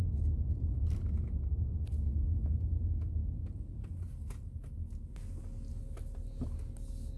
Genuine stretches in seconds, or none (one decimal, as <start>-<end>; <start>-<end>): 0.0-7.2